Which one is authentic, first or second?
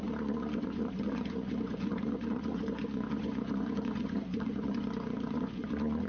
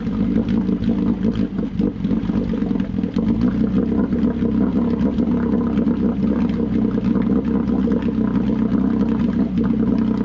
second